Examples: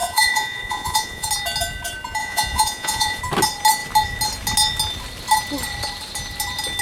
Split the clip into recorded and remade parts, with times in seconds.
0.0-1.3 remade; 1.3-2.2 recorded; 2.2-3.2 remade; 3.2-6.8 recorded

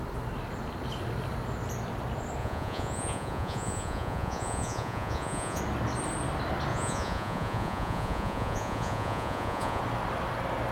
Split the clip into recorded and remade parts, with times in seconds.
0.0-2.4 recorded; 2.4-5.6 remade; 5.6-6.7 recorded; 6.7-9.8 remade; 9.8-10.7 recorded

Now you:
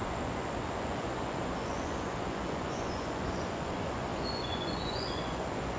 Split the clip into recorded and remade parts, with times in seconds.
0.0-5.8 remade

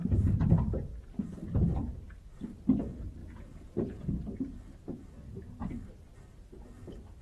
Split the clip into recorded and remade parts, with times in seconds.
0.0-1.7 recorded; 1.7-2.4 remade; 2.4-3.2 recorded; 3.2-4.1 remade; 4.1-7.2 recorded